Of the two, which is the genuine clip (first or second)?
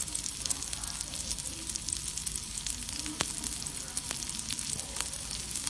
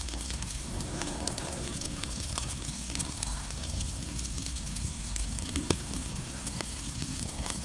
first